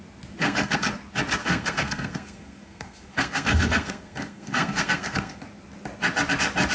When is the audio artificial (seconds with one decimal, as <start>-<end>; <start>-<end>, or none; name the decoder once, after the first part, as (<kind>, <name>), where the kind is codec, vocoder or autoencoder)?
0.4-0.9 (codec, SNAC); 1.4-5.4